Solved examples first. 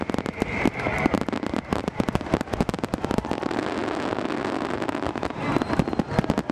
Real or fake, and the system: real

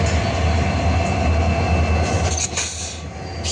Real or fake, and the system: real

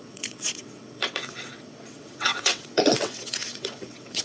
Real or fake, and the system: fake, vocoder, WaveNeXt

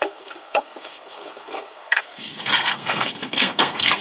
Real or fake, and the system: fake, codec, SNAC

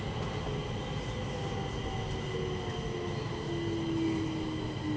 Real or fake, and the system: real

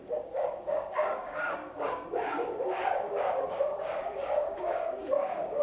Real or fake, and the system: fake, codec, DAC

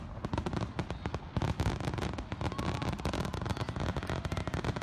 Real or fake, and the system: real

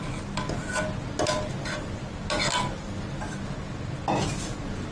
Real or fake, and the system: real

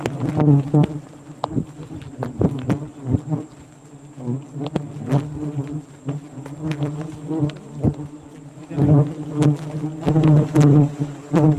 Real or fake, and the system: real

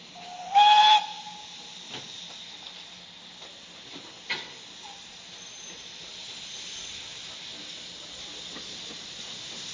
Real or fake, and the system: real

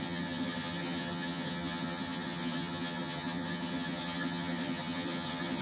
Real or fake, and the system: fake, vocoder, HiFi-GAN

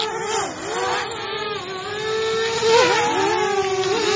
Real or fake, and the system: real